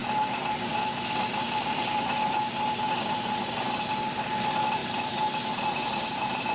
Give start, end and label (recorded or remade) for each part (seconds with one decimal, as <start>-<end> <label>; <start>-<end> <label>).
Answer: 0.0-6.5 remade

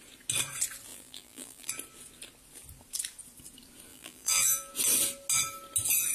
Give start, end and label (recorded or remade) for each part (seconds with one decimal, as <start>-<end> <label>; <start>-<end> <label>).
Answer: 0.0-0.9 recorded; 0.9-1.7 remade; 1.7-3.9 recorded; 3.9-4.7 remade; 4.7-6.1 recorded

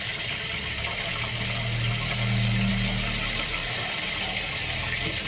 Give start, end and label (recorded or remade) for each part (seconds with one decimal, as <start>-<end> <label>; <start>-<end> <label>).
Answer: 0.0-3.6 recorded; 3.6-4.2 remade; 4.2-5.3 recorded

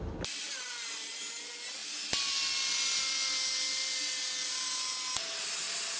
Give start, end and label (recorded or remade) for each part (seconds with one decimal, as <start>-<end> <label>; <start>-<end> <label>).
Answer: 0.0-6.0 recorded

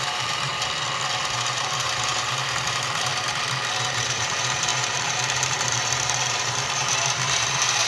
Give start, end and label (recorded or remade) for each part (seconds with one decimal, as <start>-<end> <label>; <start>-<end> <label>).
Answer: 0.0-0.5 remade; 0.5-1.2 recorded; 1.2-3.1 remade; 3.1-3.8 recorded; 3.8-7.9 remade